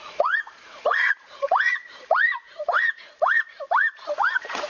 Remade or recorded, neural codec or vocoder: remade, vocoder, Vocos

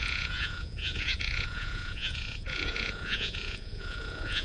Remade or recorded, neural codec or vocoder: remade, vocoder, Vocos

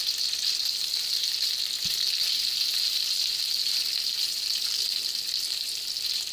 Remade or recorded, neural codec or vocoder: recorded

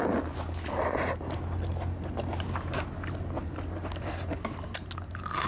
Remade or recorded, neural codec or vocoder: recorded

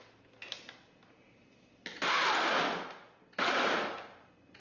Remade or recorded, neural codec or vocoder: recorded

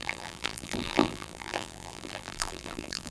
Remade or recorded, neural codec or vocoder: remade, vocoder, BigVGAN v2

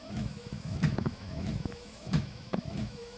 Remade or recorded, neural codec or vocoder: remade, autoencoder, DAC-VAE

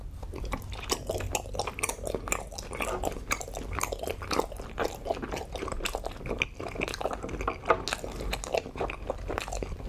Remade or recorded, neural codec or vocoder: recorded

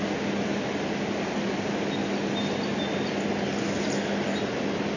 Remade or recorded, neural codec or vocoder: recorded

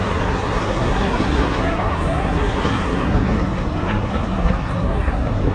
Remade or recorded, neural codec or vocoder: remade, codec, SNAC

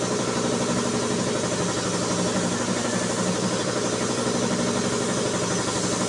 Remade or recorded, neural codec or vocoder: recorded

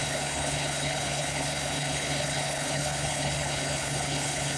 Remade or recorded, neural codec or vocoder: remade, codec, HILCodec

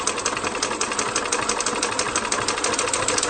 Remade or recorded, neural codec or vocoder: recorded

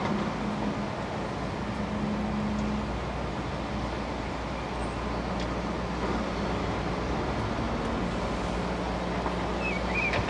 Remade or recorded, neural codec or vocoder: recorded